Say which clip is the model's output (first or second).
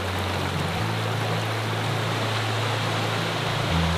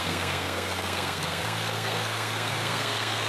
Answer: second